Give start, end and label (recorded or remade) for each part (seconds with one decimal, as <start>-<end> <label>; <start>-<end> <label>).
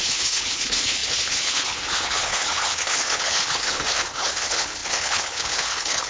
0.0-6.1 remade